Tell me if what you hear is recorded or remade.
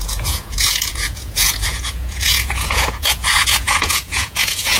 remade